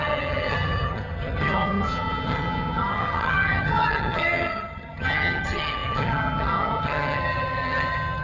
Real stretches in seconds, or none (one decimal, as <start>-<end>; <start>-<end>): none